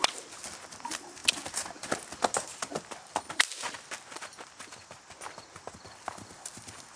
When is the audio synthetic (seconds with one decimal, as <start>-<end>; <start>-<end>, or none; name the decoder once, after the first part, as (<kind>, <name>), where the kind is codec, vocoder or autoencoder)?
none